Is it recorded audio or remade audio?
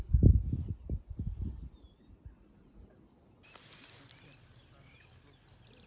recorded